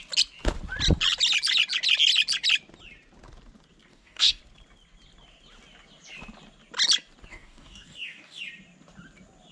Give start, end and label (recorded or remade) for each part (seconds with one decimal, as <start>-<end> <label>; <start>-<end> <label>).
0.0-3.9 recorded; 3.9-4.4 remade; 4.4-7.3 recorded; 7.3-8.4 remade; 8.4-9.5 recorded